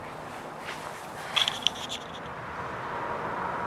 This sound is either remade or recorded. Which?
recorded